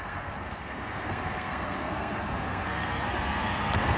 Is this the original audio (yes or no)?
no